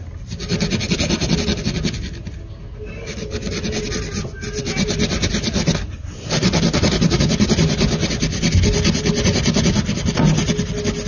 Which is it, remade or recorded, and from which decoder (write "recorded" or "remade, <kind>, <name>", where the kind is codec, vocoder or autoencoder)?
recorded